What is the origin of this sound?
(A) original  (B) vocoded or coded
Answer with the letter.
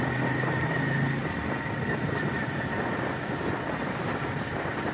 A